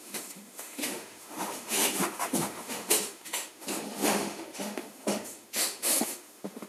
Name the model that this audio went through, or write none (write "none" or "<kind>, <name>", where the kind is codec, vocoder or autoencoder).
autoencoder, DAC-VAE